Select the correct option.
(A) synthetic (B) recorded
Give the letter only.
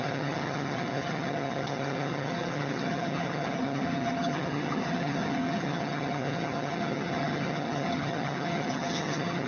A